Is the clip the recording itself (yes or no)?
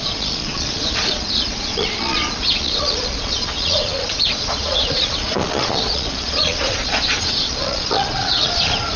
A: no